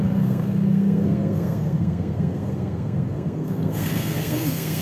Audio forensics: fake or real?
fake